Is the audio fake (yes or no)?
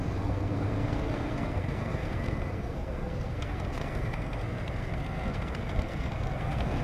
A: yes